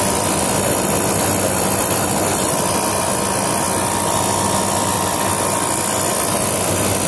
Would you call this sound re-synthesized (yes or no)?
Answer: no